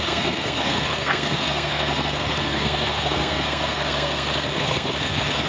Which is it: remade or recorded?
remade